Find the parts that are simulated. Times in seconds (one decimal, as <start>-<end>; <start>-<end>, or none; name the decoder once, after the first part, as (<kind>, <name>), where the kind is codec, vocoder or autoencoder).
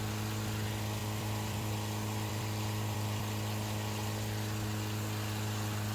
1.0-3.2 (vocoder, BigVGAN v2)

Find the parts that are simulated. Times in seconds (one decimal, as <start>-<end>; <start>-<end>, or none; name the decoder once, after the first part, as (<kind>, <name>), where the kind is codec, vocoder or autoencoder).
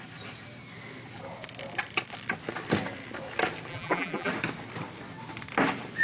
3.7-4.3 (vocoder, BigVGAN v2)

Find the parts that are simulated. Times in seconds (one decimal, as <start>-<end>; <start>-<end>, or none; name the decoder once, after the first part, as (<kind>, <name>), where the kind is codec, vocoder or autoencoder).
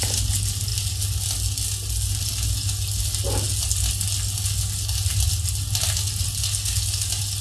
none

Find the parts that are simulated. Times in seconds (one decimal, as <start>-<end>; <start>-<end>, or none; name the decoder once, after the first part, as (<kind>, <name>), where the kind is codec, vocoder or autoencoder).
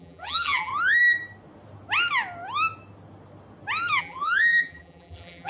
0.0-0.7 (vocoder, BigVGAN v2); 4.0-5.5